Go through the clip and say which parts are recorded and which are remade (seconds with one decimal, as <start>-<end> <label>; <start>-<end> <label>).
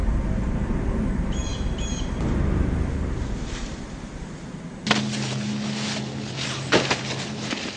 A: 0.0-0.8 remade; 0.8-1.5 recorded; 1.5-4.1 remade; 4.1-7.8 recorded